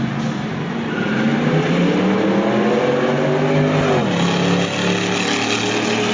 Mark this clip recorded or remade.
recorded